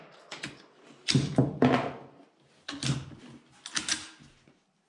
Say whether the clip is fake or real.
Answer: real